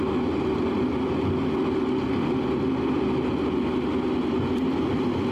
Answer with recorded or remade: recorded